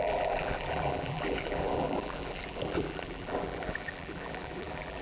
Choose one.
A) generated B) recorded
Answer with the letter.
A